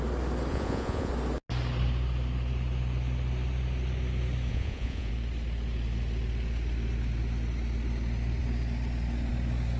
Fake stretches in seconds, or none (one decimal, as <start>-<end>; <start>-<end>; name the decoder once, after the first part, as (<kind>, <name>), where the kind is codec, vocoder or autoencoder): 0.5-1.1 (vocoder, Vocos); 4.5-5.1